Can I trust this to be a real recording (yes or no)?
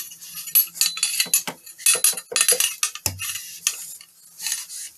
yes